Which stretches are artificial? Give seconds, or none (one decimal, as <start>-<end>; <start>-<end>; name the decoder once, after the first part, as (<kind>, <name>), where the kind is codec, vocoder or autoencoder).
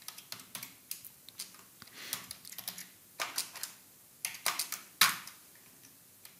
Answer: none